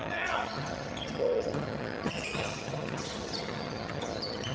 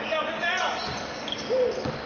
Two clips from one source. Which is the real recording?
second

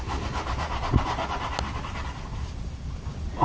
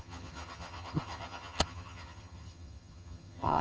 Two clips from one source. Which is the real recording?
first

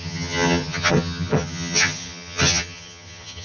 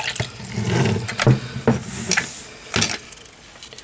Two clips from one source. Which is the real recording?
second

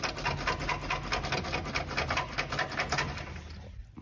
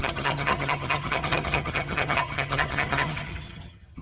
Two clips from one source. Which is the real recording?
first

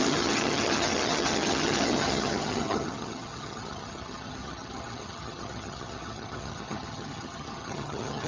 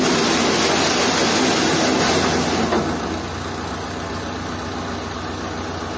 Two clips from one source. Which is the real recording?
second